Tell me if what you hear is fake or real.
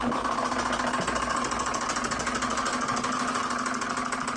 real